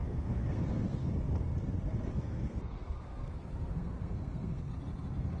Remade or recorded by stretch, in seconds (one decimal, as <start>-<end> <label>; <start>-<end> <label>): 0.0-1.1 remade; 1.1-2.1 recorded; 2.1-4.7 remade; 4.7-5.4 recorded